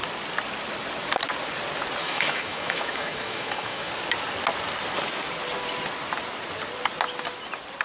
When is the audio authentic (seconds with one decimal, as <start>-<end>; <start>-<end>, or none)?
0.0-2.0; 3.9-7.8